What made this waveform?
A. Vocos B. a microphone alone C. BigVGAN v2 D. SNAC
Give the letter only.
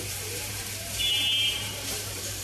C